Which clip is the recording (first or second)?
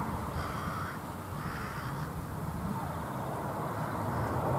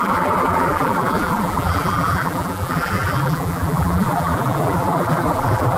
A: first